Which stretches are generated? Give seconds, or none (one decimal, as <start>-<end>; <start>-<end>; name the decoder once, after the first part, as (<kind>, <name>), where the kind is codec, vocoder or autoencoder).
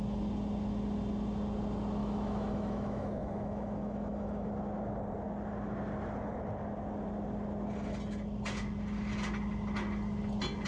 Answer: 2.0-4.5 (autoencoder, DAC-VAE)